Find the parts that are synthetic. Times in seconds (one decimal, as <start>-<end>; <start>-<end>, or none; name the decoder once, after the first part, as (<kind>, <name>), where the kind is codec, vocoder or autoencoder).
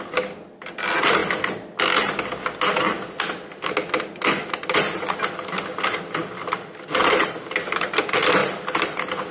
7.0-8.0 (vocoder, BigVGAN v2)